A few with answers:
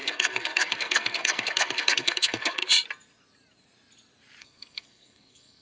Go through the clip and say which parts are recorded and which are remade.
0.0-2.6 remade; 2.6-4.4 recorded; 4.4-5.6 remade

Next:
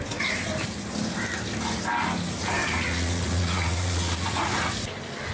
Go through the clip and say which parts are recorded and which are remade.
0.0-2.6 recorded; 2.6-4.7 remade; 4.7-5.3 recorded

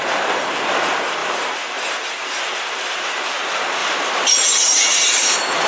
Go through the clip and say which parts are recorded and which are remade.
0.0-1.2 recorded; 1.2-3.2 remade; 3.2-3.8 recorded; 3.8-5.7 remade

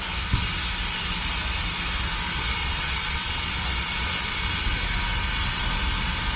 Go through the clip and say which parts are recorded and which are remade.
0.0-2.6 recorded; 2.6-3.5 remade; 3.5-6.4 recorded

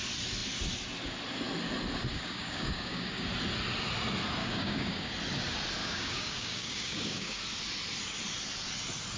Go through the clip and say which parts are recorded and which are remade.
0.0-2.1 recorded; 2.1-3.3 remade; 3.3-4.4 recorded; 4.4-5.1 remade; 5.1-5.8 recorded; 5.8-7.4 remade; 7.4-9.2 recorded

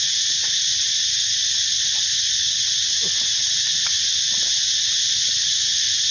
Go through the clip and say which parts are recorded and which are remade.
0.0-6.1 recorded

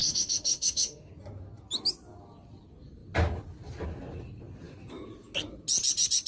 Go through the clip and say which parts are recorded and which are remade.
0.0-1.1 remade; 1.1-6.3 recorded

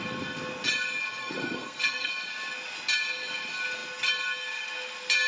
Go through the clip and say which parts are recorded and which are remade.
0.0-1.2 recorded; 1.2-2.1 remade; 2.1-5.3 recorded